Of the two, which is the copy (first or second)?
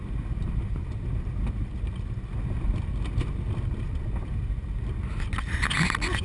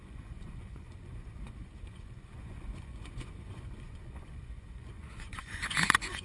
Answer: second